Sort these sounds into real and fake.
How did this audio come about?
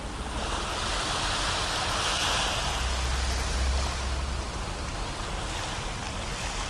real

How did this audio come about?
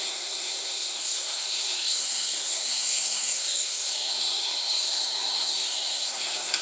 fake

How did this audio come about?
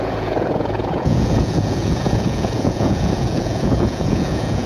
fake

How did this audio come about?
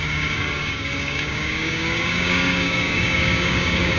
fake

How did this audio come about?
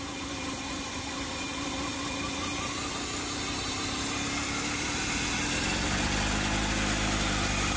real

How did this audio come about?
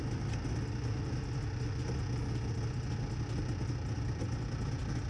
real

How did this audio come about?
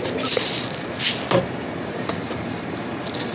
real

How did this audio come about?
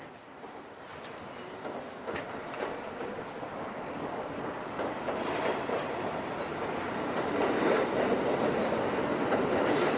real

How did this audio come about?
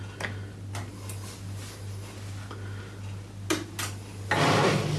real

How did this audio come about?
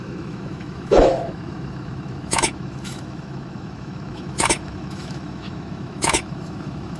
fake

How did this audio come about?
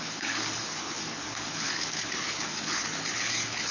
fake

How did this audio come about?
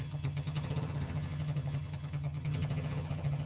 fake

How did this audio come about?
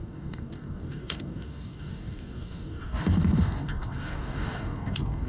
fake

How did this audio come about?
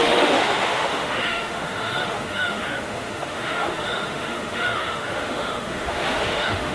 fake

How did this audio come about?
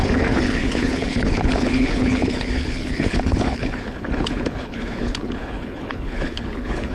fake